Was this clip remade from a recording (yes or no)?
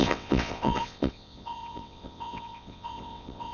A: yes